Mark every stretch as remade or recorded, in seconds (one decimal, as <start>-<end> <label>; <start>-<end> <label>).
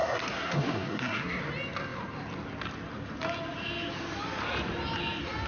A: 0.0-1.4 remade; 1.4-5.5 recorded